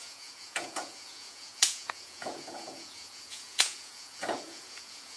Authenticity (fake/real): fake